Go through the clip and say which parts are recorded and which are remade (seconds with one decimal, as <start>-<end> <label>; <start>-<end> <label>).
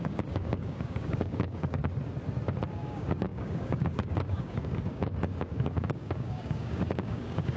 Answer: 0.0-1.8 remade; 1.8-2.7 recorded; 2.7-7.6 remade